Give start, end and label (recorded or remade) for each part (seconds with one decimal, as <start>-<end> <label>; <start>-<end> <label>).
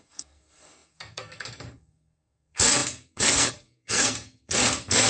0.0-5.1 remade